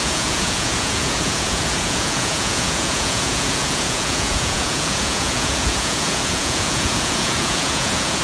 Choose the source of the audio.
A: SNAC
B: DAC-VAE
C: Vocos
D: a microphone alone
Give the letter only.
C